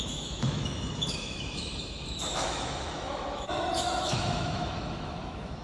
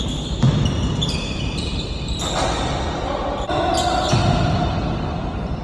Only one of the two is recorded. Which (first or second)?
second